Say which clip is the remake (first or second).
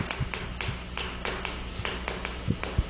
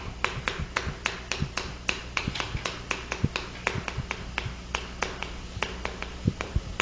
second